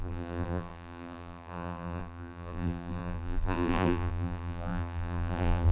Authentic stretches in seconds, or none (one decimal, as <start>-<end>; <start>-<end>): none